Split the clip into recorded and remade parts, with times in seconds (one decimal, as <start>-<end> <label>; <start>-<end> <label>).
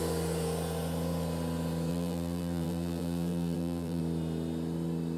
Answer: 0.0-1.9 recorded; 1.9-4.0 remade; 4.0-5.2 recorded